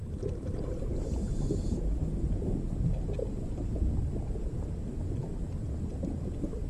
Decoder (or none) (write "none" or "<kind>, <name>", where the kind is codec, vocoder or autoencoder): none